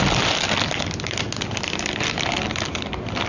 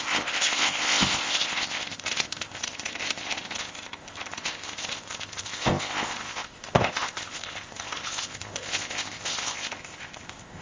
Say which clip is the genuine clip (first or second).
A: first